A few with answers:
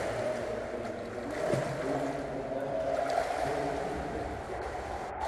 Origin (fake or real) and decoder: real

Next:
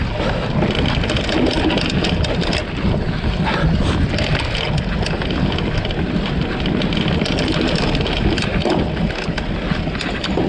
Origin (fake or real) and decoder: real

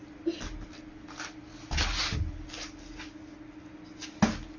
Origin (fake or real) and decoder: real